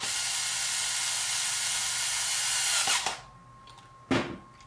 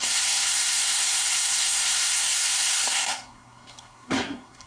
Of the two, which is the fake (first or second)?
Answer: second